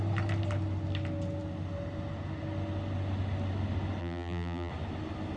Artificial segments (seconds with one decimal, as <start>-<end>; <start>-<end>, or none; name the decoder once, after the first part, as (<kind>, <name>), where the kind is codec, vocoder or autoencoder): 4.0-4.7 (vocoder, BigVGAN v2)